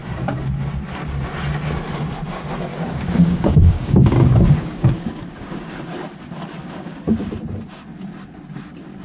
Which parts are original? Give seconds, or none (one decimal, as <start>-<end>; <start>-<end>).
0.0-2.7; 5.9-6.6; 7.3-9.0